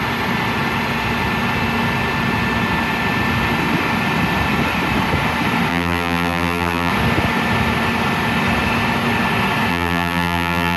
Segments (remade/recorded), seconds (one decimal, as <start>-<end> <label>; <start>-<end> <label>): 0.0-5.7 recorded; 5.7-6.9 remade; 6.9-9.7 recorded; 9.7-10.8 remade